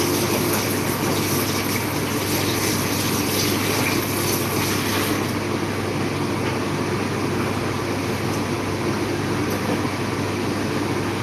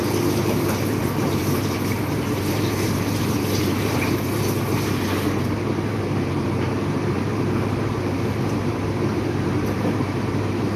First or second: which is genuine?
first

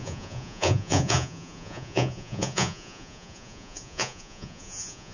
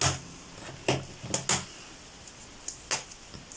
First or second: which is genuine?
second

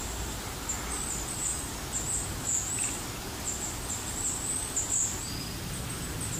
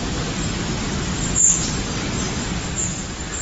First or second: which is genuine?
first